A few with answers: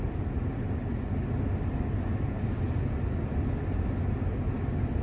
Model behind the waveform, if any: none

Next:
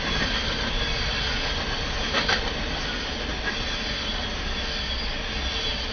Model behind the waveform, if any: none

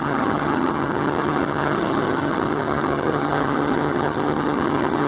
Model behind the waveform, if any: vocoder, HiFi-GAN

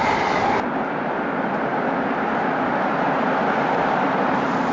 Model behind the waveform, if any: none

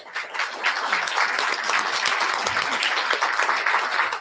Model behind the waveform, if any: none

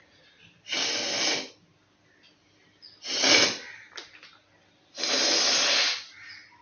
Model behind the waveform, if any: none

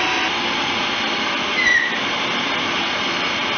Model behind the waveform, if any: none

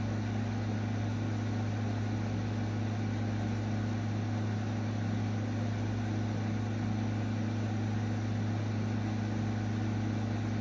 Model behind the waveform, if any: none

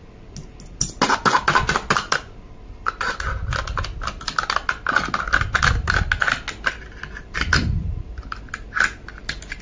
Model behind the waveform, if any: none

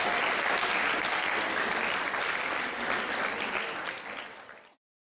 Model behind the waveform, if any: none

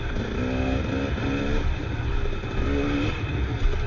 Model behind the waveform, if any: none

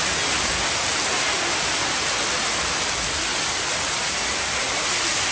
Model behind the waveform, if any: none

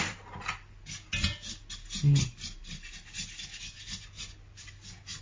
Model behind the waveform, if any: none